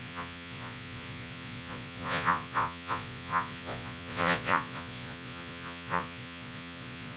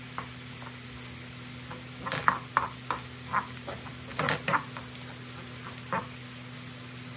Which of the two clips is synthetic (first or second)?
first